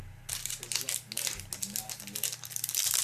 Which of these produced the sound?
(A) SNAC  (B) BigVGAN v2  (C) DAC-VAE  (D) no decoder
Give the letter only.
D